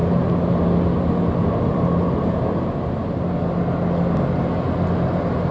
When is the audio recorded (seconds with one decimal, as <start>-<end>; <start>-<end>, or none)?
0.0-5.5